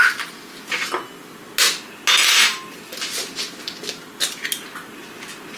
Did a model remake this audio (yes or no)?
no